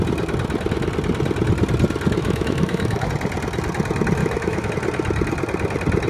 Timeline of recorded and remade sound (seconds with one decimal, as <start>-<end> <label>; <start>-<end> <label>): 0.0-2.2 recorded; 2.2-3.1 remade; 3.1-4.2 recorded; 4.2-4.7 remade; 4.7-6.1 recorded